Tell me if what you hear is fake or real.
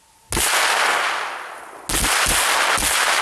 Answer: real